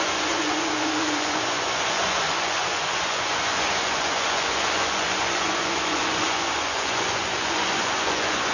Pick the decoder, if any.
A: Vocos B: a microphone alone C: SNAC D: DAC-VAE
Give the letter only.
A